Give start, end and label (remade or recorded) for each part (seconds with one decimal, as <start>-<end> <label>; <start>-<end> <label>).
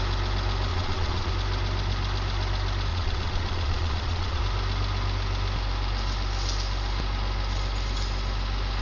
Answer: 0.0-0.7 recorded; 0.7-1.3 remade; 1.3-2.9 recorded; 2.9-4.4 remade; 4.4-8.8 recorded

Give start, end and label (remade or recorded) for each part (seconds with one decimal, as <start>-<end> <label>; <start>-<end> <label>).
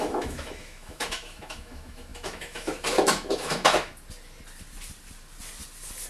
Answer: 0.0-3.9 remade; 3.9-6.1 recorded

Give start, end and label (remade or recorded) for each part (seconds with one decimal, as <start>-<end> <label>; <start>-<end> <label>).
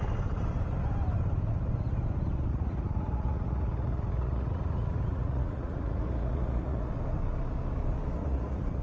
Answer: 0.0-2.5 recorded; 2.5-6.9 remade; 6.9-8.2 recorded; 8.2-8.8 remade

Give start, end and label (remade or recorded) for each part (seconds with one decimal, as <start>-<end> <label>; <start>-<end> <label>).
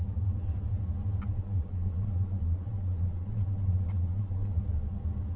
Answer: 0.0-1.4 recorded; 1.4-4.6 remade; 4.6-5.4 recorded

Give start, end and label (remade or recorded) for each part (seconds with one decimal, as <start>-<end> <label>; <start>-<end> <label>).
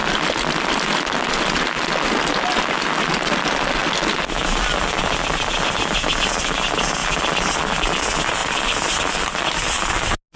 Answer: 0.0-10.4 recorded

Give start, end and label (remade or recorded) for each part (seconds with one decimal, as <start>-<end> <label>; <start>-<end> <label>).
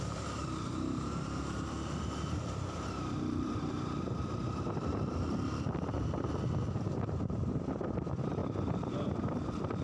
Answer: 0.0-9.8 remade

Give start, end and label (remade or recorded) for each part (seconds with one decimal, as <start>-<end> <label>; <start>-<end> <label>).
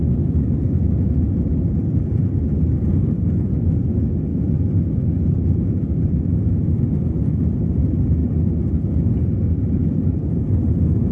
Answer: 0.0-11.1 recorded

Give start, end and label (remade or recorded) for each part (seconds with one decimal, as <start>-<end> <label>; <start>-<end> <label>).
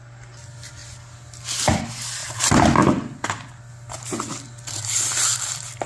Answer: 0.0-5.9 recorded